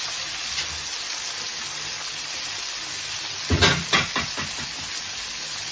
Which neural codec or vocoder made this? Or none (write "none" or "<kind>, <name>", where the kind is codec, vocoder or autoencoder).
none